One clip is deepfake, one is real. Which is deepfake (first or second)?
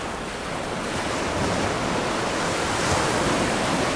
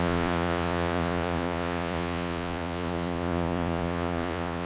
second